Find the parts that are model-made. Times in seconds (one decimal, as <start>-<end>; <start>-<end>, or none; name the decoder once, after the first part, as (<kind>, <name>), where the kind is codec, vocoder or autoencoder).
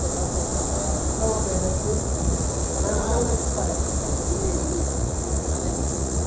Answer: 1.9-3.8 (vocoder, Vocos); 4.5-6.3